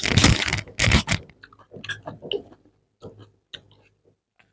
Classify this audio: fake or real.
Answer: real